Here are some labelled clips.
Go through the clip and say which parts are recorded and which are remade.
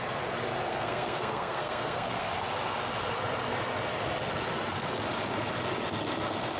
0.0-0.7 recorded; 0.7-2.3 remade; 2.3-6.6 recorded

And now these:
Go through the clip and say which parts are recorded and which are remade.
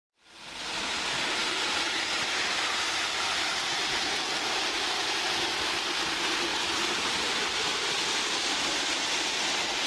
0.0-1.4 recorded; 1.4-2.3 remade; 2.3-9.9 recorded